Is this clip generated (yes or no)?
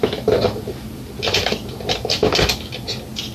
no